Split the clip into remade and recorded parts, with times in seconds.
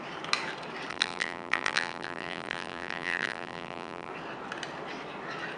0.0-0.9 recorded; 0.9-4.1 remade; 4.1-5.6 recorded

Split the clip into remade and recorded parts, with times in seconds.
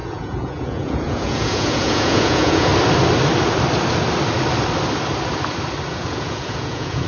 0.0-2.7 remade; 2.7-5.9 recorded; 5.9-7.1 remade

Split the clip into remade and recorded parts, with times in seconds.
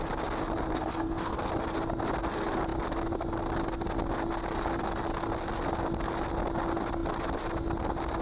0.0-0.7 recorded; 0.7-1.5 remade; 1.5-8.2 recorded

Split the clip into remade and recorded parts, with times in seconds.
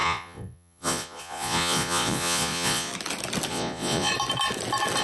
0.0-2.9 remade; 2.9-3.5 recorded; 3.5-4.1 remade; 4.1-5.0 recorded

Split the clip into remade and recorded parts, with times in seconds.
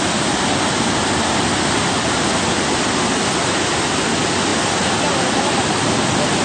0.0-6.4 recorded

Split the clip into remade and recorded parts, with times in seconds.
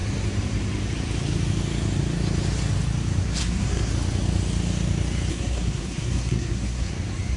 0.0-3.4 recorded; 3.4-3.9 remade; 3.9-5.3 recorded; 5.3-6.9 remade; 6.9-7.4 recorded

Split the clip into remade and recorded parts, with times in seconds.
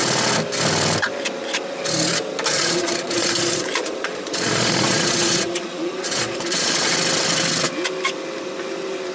0.0-2.5 recorded; 2.5-6.9 remade; 6.9-9.1 recorded